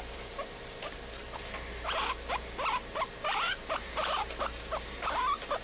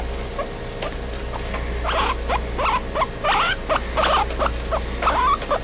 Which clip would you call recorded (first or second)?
second